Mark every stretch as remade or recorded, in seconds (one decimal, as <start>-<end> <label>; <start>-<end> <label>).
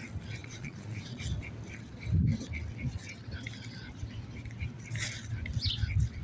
0.0-0.4 recorded; 0.4-1.2 remade; 1.2-6.2 recorded